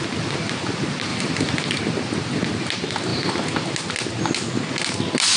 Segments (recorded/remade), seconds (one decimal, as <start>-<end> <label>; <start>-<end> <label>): 0.0-5.4 recorded